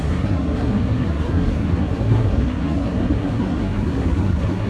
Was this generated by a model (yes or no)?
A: yes